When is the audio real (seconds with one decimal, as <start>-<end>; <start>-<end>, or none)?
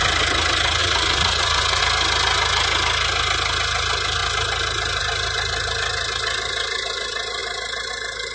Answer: 0.0-0.8; 1.8-8.3